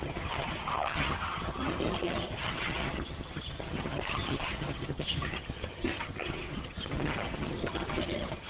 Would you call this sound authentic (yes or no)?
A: no